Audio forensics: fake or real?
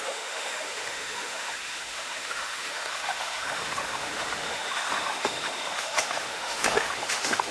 fake